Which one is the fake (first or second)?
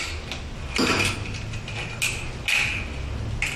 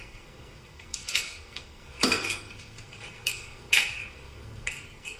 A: second